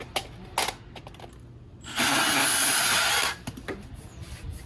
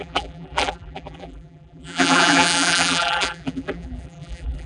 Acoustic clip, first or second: first